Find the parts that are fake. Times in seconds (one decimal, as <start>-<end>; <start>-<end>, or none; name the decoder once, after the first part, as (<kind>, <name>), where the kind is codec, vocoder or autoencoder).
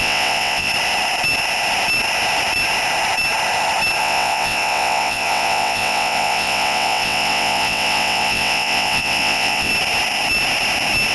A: 0.0-0.7 (vocoder, WaveNeXt); 4.0-9.7